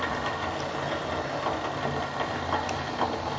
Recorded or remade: recorded